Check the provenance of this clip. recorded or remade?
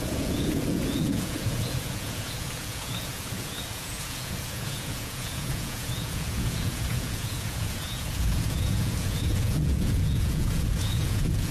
remade